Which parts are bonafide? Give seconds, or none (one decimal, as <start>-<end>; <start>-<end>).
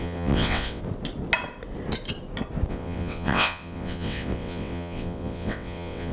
0.8-2.7